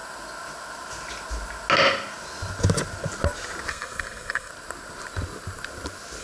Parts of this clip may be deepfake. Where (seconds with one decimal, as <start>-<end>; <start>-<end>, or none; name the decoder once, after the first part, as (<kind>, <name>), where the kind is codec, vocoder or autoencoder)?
3.7-4.5 (codec, SNAC)